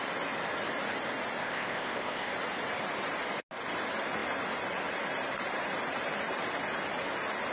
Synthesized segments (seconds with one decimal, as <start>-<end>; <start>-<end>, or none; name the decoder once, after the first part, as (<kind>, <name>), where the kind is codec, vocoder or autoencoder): 1.4-2.3 (codec, ZipCodec)